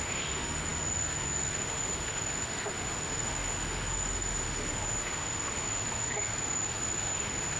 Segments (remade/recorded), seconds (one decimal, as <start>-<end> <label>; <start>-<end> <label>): 0.0-7.6 remade